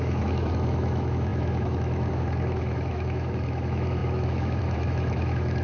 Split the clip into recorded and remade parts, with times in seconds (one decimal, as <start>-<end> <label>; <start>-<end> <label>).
0.0-5.6 remade